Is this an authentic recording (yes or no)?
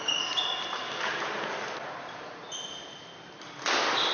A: yes